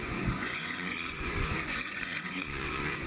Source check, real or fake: fake